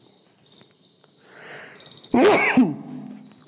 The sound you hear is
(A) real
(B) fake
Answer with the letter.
A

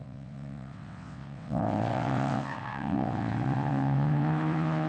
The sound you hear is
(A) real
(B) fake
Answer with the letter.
B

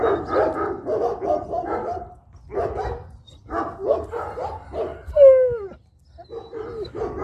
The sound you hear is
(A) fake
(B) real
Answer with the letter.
B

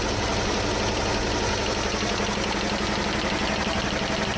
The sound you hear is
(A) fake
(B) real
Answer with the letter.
B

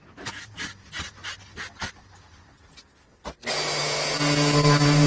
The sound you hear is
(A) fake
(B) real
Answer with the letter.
B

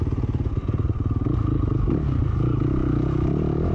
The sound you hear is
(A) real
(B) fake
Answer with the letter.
A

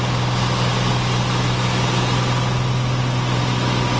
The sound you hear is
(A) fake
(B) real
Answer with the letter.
B